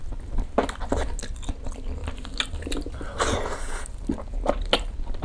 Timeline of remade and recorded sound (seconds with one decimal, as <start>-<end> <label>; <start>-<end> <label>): 0.0-5.2 recorded